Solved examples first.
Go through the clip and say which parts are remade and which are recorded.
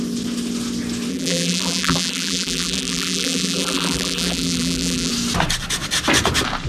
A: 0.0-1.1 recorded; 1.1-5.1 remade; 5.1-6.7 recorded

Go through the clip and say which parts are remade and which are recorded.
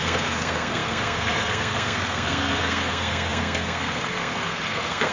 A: 0.0-5.1 remade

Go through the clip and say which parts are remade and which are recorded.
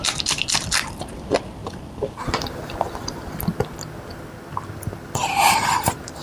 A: 0.0-6.2 recorded